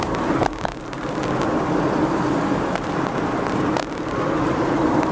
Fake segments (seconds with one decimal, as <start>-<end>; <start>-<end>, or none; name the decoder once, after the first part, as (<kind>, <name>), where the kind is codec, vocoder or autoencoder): 0.0-0.7 (vocoder, BigVGAN v2); 3.8-5.1